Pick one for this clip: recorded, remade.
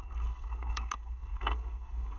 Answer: remade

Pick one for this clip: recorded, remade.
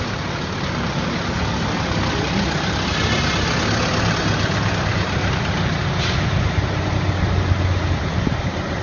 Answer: recorded